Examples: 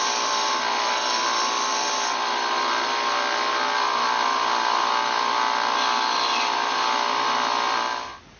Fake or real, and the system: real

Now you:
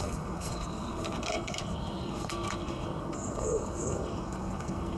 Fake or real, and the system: fake, codec, SNAC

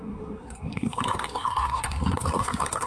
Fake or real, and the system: fake, codec, SNAC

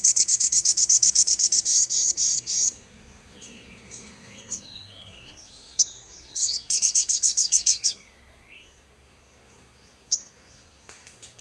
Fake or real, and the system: fake, codec, SNAC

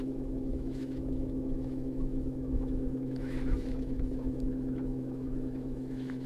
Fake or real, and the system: fake, autoencoder, DAC-VAE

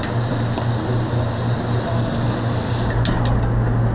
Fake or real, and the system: real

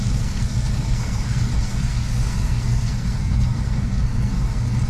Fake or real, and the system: fake, codec, SNAC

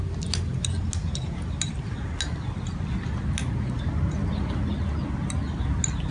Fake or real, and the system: real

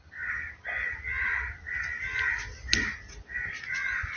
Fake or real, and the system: real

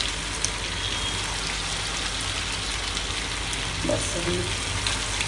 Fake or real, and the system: real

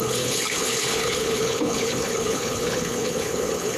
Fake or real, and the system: fake, codec, HILCodec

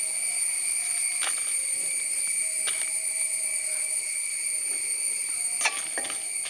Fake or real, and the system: real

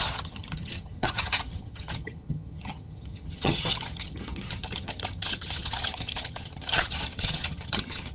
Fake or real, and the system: fake, vocoder, HiFi-GAN